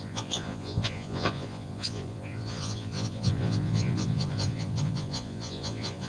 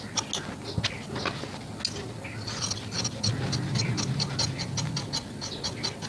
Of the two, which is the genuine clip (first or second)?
second